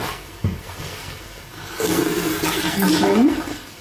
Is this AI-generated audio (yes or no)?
yes